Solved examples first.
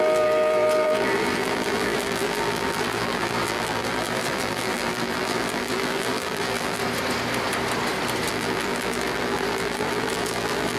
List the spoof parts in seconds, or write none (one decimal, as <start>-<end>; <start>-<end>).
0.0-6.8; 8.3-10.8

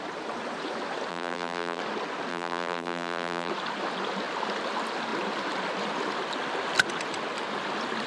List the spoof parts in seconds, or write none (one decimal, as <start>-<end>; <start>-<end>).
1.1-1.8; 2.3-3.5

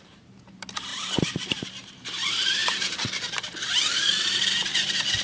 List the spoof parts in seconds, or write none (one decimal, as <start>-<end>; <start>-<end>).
0.0-5.2